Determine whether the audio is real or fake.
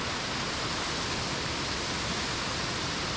real